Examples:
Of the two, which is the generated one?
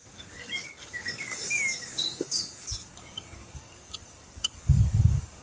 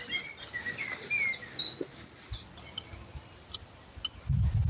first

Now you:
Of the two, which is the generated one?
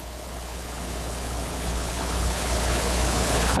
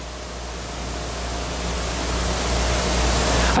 first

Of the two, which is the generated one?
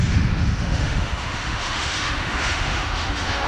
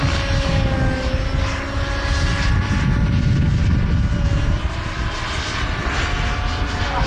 first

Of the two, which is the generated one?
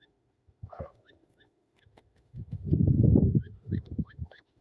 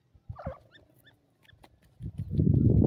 first